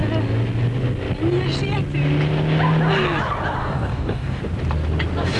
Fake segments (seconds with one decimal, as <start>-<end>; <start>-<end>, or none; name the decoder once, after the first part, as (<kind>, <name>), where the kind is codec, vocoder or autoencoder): 3.6-4.4 (codec, DAC)